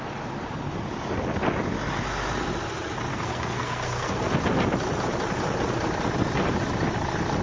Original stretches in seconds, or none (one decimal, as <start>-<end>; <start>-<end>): 0.0-3.1; 4.3-7.4